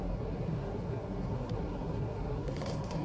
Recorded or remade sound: remade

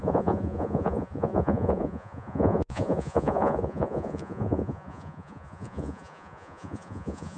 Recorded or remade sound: remade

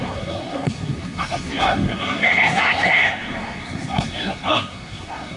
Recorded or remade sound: remade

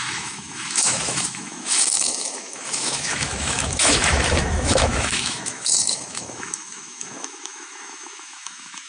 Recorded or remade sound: remade